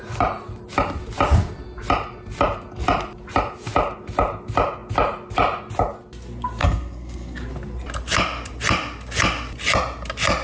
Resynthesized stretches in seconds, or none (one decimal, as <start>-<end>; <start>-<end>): 6.6-7.4